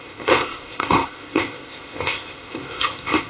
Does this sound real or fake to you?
fake